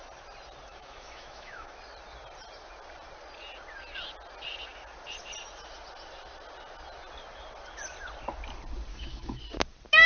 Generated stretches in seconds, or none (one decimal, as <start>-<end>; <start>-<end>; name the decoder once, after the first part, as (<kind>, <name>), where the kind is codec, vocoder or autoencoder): 0.7-1.8 (autoencoder, DAC-VAE); 8.9-9.4